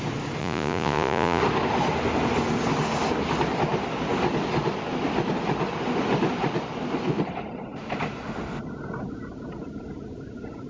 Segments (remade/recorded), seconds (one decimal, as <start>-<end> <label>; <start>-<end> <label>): 0.0-0.4 recorded; 0.4-1.4 remade; 1.4-10.7 recorded